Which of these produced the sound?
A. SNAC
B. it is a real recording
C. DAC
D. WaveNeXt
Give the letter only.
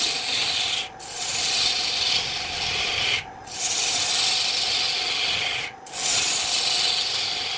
B